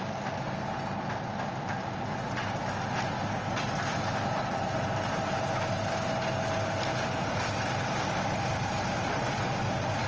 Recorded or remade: recorded